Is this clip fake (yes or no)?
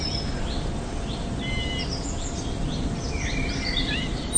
no